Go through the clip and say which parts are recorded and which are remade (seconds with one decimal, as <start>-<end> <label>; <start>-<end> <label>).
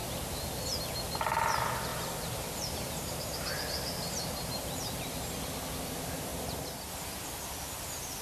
0.0-1.9 recorded; 1.9-5.0 remade; 5.0-6.3 recorded; 6.3-6.9 remade; 6.9-8.2 recorded